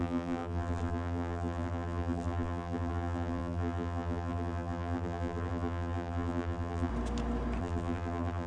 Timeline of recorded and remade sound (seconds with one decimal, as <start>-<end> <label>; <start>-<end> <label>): 0.0-6.9 remade; 6.9-7.6 recorded; 7.6-8.5 remade

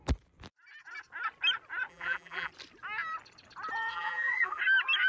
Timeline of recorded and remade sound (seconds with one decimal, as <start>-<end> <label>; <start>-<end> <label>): 0.0-1.9 recorded; 1.9-2.5 remade; 2.5-3.9 recorded; 3.9-4.6 remade; 4.6-5.1 recorded